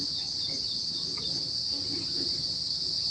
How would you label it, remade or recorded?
recorded